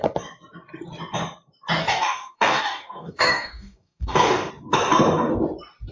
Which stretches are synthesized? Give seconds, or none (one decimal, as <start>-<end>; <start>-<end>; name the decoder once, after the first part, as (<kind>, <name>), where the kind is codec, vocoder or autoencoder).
1.8-4.5 (codec, DAC)